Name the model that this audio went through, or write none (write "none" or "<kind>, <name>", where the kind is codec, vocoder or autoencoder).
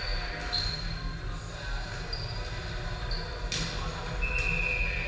none